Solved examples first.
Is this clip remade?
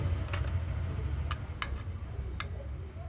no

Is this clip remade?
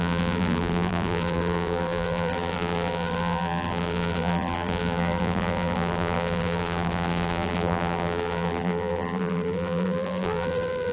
yes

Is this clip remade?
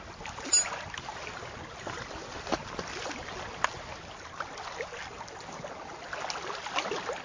no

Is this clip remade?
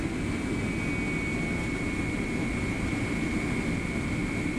no